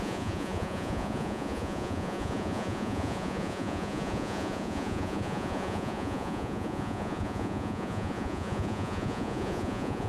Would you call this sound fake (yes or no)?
yes